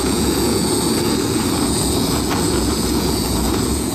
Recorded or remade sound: remade